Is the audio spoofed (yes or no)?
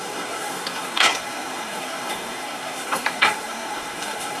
yes